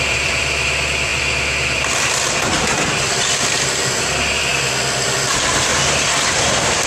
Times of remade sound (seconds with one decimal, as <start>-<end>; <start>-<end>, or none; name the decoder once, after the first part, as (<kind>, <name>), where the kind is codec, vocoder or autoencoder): 0.0-4.5 (vocoder, BigVGAN v2); 5.3-5.7; 6.3-6.9